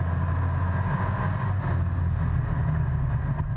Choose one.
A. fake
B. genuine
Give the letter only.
B